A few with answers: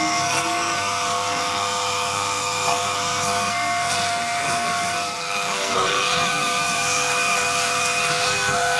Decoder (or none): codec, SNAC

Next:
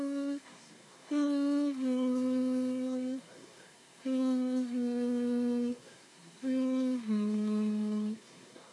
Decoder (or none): codec, SNAC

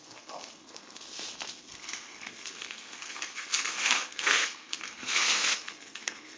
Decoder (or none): codec, SNAC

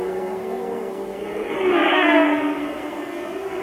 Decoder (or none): codec, SNAC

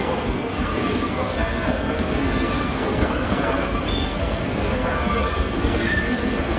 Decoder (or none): codec, SNAC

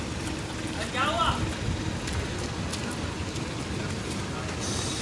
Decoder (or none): none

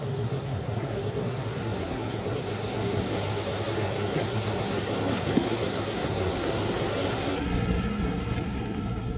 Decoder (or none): codec, SNAC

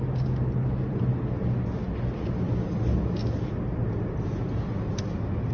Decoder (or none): none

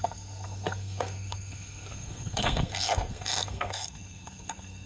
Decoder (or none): codec, SNAC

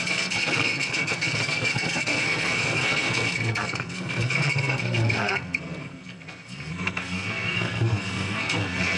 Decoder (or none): codec, SNAC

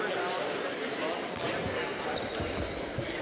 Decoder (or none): none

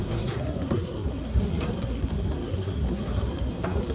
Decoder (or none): codec, SNAC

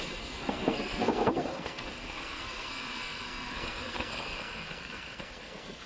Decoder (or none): codec, SNAC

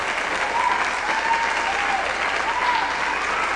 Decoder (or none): none